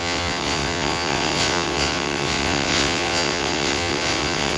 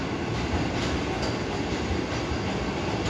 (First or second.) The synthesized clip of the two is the first